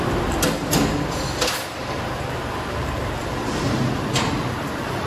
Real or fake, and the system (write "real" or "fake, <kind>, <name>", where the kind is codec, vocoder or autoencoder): fake, vocoder, BigVGAN v2